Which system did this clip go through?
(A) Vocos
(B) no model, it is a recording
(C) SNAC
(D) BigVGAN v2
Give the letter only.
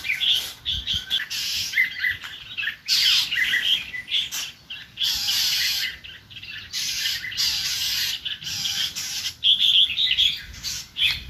B